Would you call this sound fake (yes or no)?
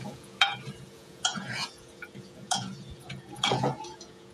yes